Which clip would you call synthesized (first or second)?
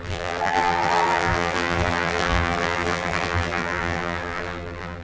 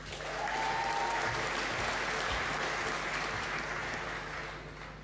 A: first